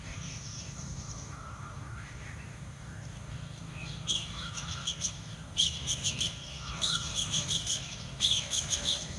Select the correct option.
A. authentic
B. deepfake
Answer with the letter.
B